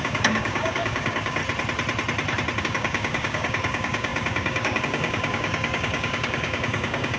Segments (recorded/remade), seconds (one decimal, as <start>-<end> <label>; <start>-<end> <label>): 0.0-1.4 remade; 1.4-2.6 recorded; 2.6-7.2 remade